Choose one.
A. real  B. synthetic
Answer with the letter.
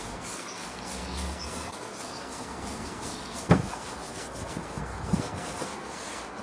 B